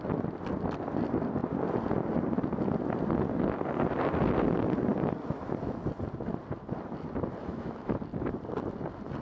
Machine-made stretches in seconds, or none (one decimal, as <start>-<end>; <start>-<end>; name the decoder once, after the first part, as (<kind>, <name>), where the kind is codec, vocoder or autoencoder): 7.4-7.9 (autoencoder, DAC-VAE)